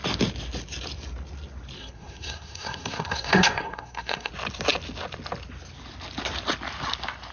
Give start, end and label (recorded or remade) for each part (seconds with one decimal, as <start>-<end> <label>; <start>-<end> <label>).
0.0-1.8 recorded; 1.8-4.3 remade; 4.3-7.3 recorded

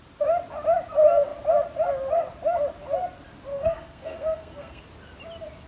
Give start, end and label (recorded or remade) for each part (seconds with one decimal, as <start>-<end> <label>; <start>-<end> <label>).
0.0-3.5 recorded; 3.5-4.8 remade; 4.8-5.7 recorded

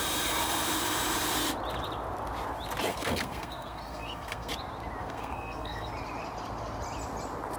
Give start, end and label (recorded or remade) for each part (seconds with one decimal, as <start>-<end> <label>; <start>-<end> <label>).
0.0-2.9 recorded; 2.9-4.5 remade; 4.5-5.0 recorded; 5.0-5.9 remade; 5.9-7.6 recorded

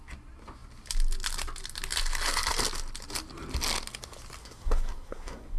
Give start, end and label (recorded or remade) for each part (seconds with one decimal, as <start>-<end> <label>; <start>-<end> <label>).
0.0-4.4 recorded; 4.4-5.6 remade

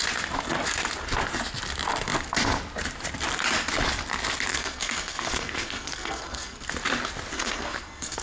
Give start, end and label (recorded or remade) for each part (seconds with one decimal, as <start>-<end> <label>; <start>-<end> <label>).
0.0-4.5 recorded; 4.5-6.7 remade; 6.7-7.3 recorded; 7.3-8.2 remade

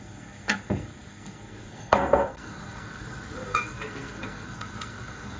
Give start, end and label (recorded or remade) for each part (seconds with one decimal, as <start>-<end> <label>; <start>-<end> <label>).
0.0-5.4 remade

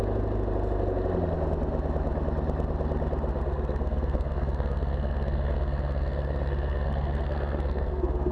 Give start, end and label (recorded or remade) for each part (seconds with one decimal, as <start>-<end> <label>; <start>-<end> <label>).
0.0-3.3 recorded; 3.3-8.3 remade

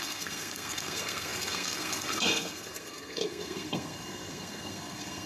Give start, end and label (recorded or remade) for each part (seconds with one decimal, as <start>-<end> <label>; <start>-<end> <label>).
0.0-5.3 remade